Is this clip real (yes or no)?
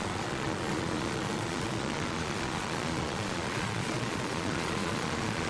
no